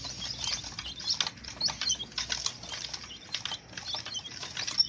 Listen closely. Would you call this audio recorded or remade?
recorded